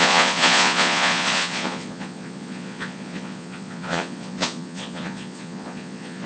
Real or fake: fake